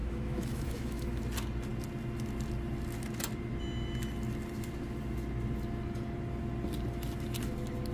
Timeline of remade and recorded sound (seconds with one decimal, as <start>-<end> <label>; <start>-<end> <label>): 0.0-1.2 remade; 1.2-7.9 recorded